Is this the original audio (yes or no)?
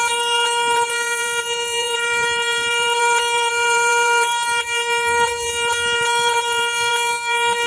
no